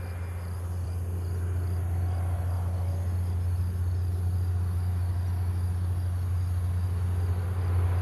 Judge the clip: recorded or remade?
recorded